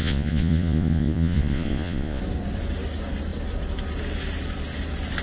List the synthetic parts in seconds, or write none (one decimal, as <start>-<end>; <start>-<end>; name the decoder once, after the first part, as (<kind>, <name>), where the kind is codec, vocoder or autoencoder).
0.0-2.2 (vocoder, Vocos)